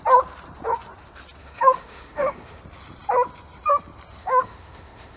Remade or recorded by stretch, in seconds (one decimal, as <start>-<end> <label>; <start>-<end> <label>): 0.0-1.4 recorded; 1.4-2.6 remade; 2.6-4.2 recorded; 4.2-5.2 remade